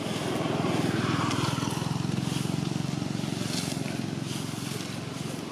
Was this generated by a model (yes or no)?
no